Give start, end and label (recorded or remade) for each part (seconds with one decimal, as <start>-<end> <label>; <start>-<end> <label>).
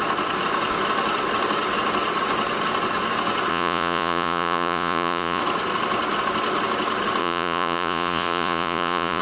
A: 0.0-3.5 recorded; 3.5-5.4 remade; 5.4-7.2 recorded; 7.2-9.2 remade